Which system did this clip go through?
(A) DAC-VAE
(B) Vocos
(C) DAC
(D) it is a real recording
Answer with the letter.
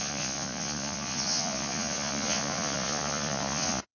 B